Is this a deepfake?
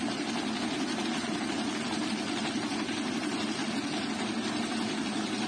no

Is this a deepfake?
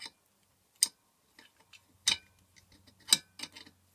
no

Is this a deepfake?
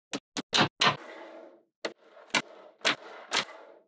no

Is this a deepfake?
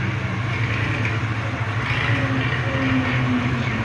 no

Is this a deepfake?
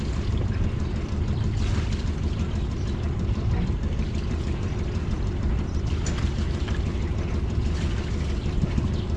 yes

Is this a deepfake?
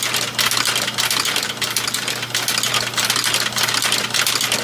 no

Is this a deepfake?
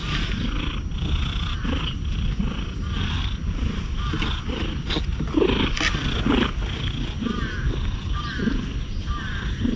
no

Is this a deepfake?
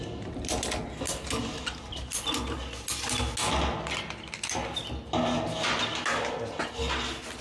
no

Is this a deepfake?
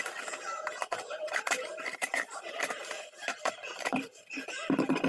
yes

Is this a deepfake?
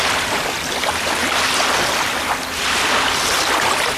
no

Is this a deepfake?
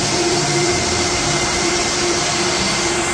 yes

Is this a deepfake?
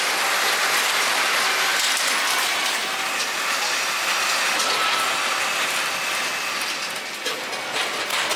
no